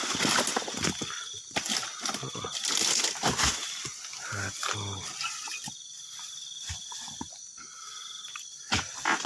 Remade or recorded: recorded